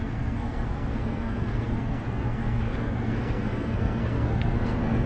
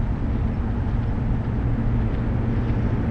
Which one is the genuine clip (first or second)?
second